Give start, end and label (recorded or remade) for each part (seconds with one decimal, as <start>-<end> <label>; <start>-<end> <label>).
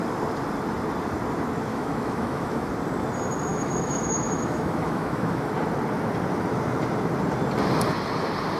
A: 0.0-1.7 recorded; 1.7-2.7 remade; 2.7-3.5 recorded; 3.5-5.5 remade; 5.5-8.6 recorded